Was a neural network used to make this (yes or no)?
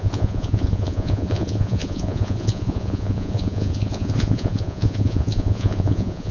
yes